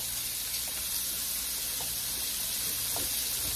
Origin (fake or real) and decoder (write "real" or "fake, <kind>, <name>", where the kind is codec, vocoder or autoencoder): real